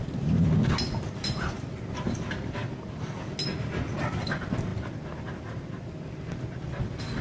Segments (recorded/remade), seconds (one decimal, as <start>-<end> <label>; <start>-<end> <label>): 0.0-7.2 recorded